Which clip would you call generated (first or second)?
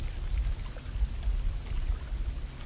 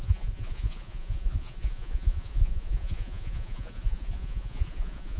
second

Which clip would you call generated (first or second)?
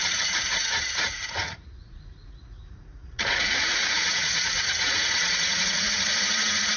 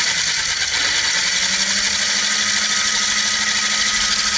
first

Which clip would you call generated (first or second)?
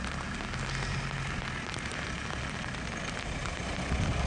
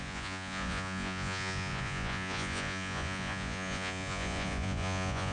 second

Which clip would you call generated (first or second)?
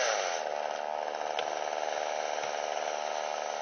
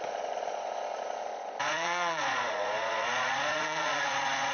second